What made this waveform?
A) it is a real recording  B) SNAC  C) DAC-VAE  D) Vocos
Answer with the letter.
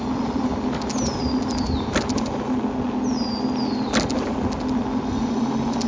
A